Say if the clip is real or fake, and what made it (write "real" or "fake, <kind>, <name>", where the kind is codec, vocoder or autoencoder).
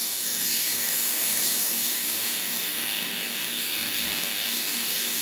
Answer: fake, codec, DAC